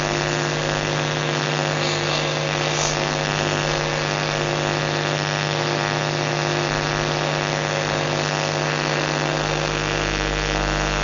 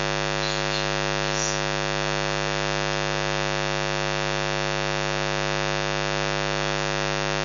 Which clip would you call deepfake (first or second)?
first